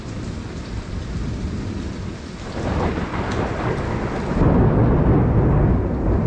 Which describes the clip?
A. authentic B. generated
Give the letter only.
A